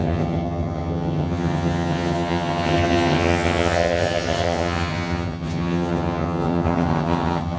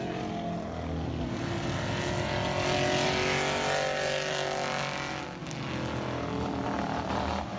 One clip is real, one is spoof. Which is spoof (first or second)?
first